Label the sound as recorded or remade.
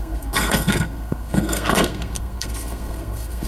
remade